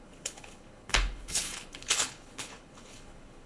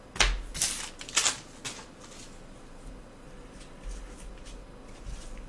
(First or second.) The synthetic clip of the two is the first